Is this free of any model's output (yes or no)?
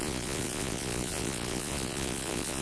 no